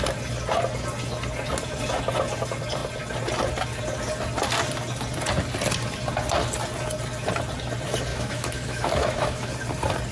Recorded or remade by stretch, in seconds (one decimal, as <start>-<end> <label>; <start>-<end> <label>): 0.0-8.1 recorded; 8.1-9.5 remade; 9.5-10.1 recorded